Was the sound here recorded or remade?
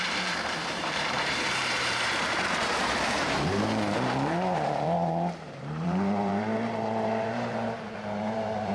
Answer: remade